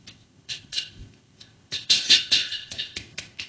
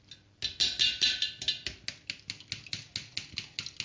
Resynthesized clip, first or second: first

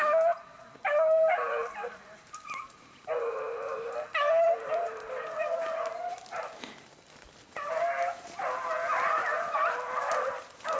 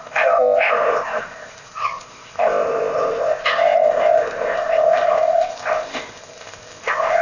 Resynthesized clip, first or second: second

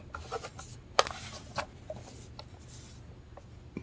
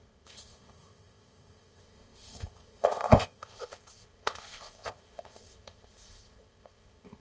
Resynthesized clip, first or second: second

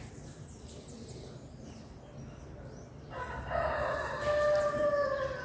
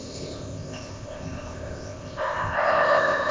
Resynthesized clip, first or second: second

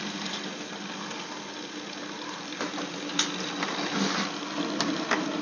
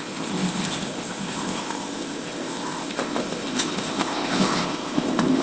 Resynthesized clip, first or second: second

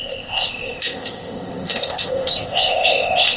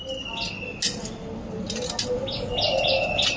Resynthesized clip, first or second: first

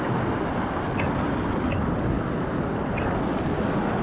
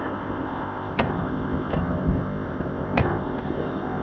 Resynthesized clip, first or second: second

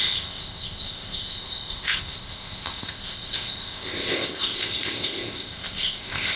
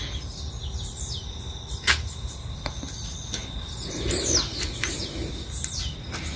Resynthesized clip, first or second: first